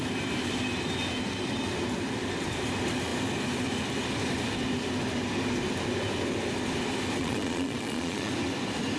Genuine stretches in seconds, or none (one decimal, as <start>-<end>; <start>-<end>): 0.0-7.2; 8.3-9.0